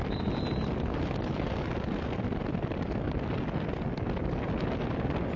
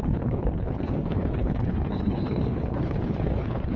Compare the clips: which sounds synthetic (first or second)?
second